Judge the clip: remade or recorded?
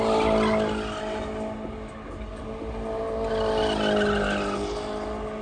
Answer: recorded